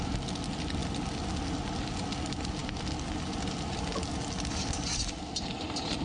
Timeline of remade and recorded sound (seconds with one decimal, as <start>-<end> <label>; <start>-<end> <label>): 0.0-6.0 recorded